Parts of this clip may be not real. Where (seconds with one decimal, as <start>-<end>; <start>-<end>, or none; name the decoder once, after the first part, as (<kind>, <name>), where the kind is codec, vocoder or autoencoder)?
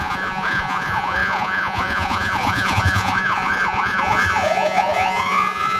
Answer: 0.0-5.8 (vocoder, Vocos)